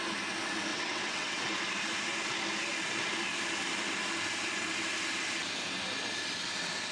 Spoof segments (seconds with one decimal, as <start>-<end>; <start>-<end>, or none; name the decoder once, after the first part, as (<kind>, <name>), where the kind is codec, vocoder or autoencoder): 0.7-1.4 (vocoder, WaveNeXt)